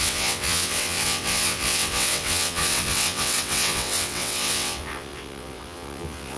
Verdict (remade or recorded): remade